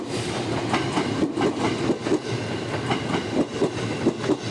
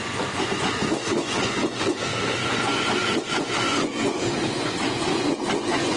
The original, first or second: first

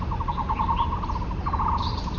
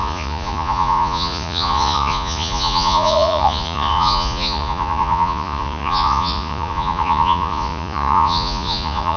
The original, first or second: first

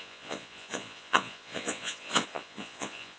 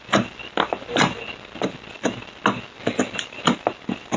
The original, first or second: second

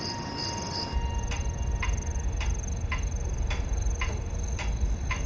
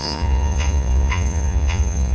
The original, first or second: first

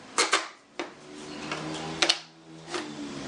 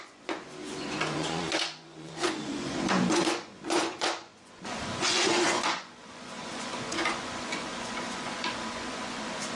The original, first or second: first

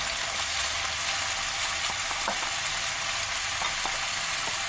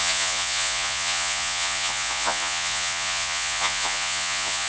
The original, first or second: first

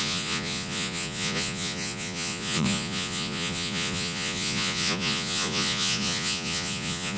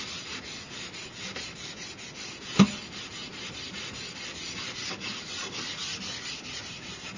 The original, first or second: second